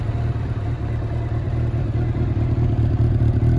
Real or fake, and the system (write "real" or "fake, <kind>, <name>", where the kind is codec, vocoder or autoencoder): fake, vocoder, BigVGAN v2